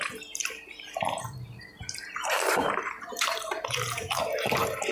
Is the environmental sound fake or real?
fake